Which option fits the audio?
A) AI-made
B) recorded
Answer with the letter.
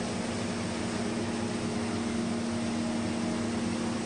B